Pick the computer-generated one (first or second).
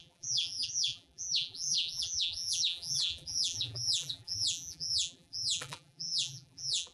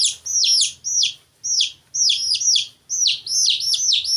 first